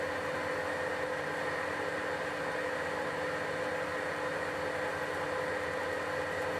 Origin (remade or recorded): recorded